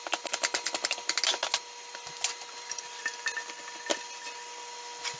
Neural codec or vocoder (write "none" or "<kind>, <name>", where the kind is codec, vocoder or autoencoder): none